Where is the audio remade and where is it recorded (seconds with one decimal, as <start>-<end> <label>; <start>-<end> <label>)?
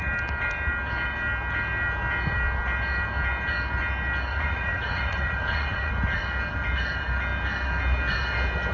0.0-4.3 recorded; 4.3-5.9 remade; 5.9-8.7 recorded